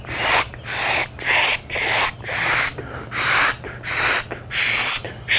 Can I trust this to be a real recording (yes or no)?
yes